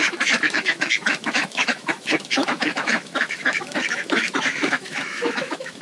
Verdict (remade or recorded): remade